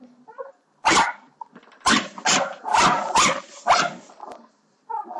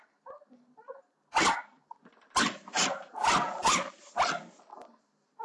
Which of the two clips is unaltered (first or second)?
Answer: second